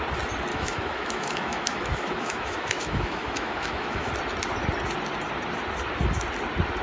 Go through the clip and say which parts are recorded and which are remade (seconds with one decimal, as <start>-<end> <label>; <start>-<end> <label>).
0.0-0.5 recorded; 0.5-4.1 remade; 4.1-6.8 recorded